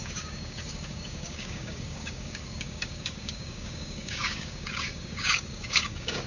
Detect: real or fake fake